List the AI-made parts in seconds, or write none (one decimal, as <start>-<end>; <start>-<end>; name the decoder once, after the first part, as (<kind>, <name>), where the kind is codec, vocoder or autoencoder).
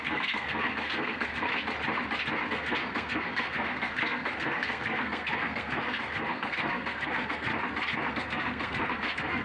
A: 0.0-1.5 (codec, SNAC); 2.5-7.5; 8.1-9.4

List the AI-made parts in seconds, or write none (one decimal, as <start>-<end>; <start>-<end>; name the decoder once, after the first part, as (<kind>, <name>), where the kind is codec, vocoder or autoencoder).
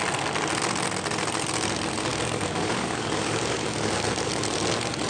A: 2.1-4.3 (codec, DAC)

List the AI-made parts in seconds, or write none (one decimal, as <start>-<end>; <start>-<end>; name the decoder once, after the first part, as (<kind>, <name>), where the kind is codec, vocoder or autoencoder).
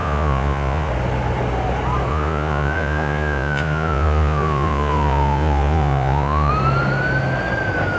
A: 0.0-0.9 (vocoder, Vocos); 2.1-6.5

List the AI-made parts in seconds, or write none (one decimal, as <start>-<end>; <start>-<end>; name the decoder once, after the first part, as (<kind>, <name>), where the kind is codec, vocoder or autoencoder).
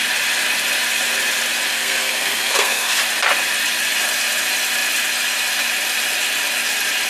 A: 1.7-3.0 (codec, SNAC)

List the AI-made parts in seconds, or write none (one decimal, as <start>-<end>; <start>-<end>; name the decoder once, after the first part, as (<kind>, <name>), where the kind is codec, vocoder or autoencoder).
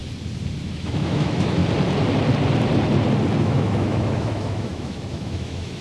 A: 0.6-1.6 (autoencoder, DAC-VAE); 3.4-5.8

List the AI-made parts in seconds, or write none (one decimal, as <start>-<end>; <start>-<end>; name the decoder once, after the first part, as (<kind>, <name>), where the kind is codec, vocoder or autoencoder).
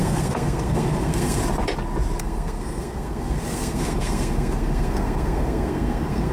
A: 0.0-1.4 (codec, SNAC); 2.2-6.3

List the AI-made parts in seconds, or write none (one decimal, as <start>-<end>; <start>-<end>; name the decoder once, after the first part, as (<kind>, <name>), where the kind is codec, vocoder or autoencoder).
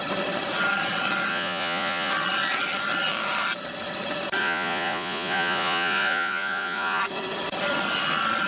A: 1.3-2.1 (vocoder, Vocos); 4.4-7.0